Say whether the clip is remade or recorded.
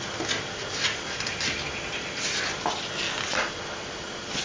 recorded